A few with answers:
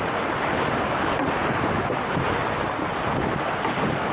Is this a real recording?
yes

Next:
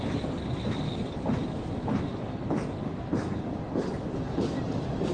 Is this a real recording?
yes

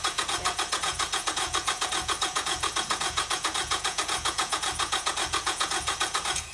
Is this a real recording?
no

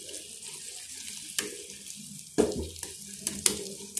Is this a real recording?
yes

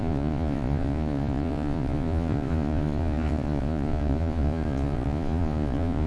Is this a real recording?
no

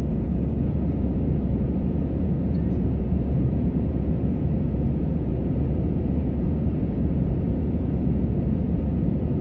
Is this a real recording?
no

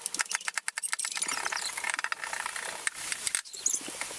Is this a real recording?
yes